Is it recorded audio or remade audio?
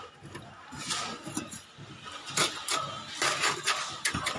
recorded